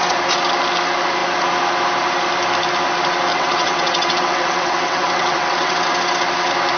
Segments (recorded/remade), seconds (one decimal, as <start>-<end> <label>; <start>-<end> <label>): 0.0-3.3 recorded; 3.3-5.9 remade; 5.9-6.8 recorded